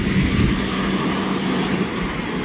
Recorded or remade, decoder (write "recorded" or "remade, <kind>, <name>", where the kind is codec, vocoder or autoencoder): recorded